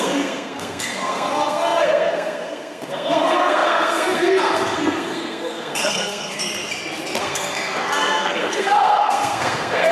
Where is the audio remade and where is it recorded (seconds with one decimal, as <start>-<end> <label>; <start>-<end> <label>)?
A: 0.0-6.4 remade; 6.4-7.2 recorded; 7.2-9.9 remade

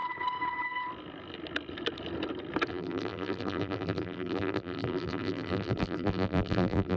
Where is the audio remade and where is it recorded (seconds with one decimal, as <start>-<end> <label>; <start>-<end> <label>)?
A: 0.0-2.7 recorded; 2.7-7.0 remade

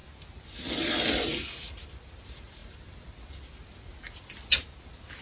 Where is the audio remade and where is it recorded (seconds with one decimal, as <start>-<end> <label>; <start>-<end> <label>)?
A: 0.0-5.2 recorded

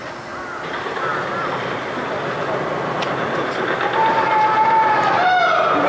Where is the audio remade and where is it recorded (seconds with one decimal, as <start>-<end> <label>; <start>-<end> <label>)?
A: 0.0-5.9 recorded

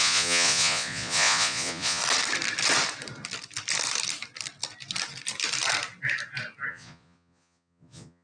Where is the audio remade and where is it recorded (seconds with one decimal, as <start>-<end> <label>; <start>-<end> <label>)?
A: 0.0-2.0 remade; 2.0-6.7 recorded; 6.7-8.2 remade

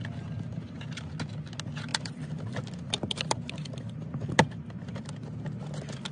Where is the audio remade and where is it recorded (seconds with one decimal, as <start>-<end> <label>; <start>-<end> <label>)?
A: 0.0-0.5 recorded; 0.5-1.0 remade; 1.0-1.9 recorded; 1.9-5.0 remade; 5.0-6.1 recorded

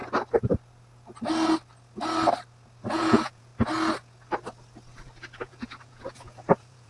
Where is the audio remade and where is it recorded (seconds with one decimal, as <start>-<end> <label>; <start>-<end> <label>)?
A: 0.0-2.8 recorded; 2.8-3.5 remade; 3.5-5.4 recorded; 5.4-6.9 remade